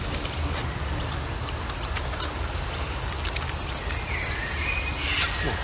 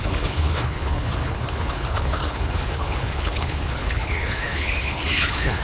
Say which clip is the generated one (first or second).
second